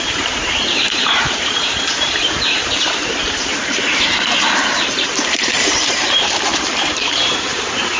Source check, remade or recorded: remade